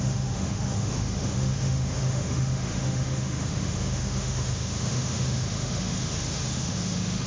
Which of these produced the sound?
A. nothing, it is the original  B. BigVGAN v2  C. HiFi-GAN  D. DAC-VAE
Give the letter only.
D